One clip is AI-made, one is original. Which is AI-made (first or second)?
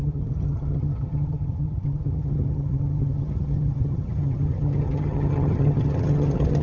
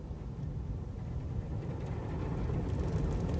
first